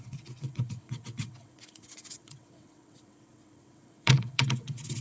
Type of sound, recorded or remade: remade